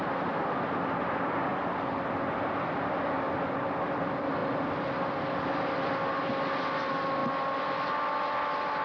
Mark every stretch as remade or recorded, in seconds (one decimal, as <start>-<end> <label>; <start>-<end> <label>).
0.0-8.8 recorded